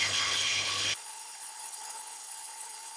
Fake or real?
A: fake